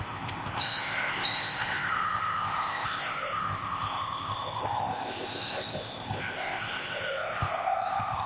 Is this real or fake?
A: fake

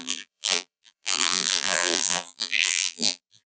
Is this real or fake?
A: fake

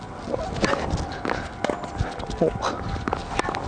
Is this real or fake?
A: real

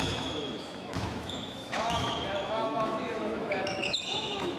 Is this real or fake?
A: fake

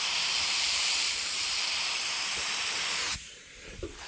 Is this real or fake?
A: fake